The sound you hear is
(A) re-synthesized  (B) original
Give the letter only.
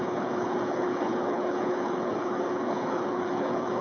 A